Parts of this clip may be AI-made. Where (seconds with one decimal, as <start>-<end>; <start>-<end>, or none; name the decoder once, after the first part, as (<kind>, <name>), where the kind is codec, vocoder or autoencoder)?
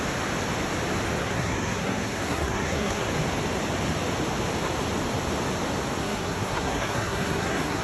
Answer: 1.2-3.1 (codec, SNAC); 6.0-7.8